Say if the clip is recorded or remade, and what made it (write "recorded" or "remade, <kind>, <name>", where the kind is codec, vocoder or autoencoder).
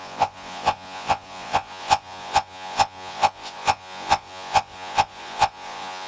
remade, vocoder, Vocos